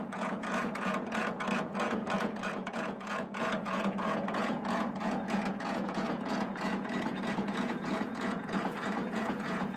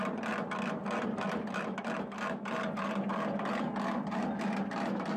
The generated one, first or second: first